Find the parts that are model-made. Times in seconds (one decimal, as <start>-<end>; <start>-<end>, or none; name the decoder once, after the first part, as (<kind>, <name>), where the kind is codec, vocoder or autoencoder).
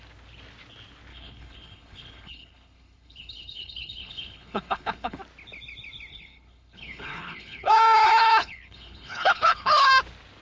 1.1-5.2 (codec, HILCodec); 6.1-9.9